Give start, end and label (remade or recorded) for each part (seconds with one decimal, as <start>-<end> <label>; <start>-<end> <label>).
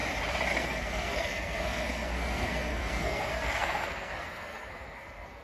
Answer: 0.0-0.5 recorded; 0.5-5.4 remade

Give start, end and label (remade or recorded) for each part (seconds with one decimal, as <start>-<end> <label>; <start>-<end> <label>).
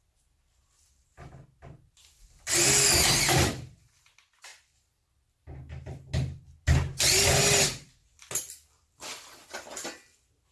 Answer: 0.0-10.5 recorded